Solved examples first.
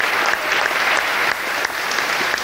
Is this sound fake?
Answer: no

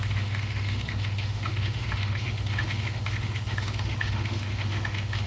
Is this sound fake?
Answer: yes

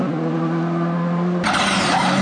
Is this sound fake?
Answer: no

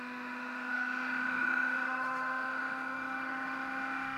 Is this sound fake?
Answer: yes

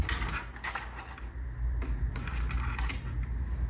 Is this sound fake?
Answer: no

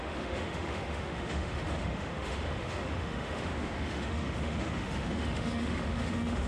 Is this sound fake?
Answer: yes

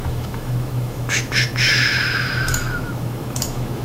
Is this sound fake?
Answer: yes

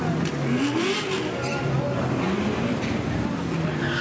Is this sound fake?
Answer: no